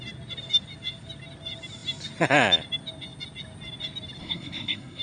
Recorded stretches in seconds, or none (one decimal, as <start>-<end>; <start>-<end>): 0.0-4.2